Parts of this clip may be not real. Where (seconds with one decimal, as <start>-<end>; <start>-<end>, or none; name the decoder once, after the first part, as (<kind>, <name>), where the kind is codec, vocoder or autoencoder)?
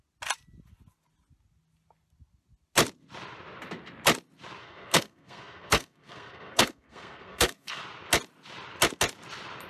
4.6-7.8 (codec, SNAC)